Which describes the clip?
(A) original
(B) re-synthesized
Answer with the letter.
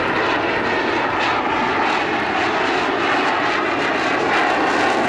A